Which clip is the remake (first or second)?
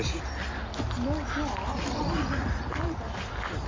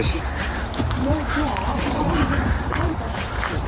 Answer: second